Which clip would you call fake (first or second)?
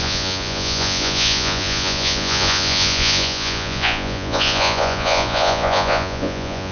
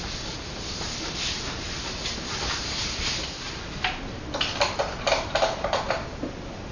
first